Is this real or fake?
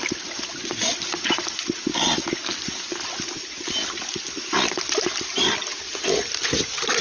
real